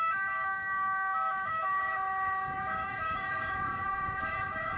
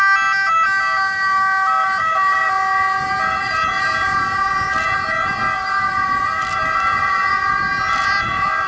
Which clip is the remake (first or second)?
first